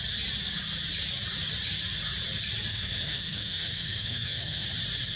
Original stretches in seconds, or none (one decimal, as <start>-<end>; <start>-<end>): 0.0-2.7; 4.7-5.2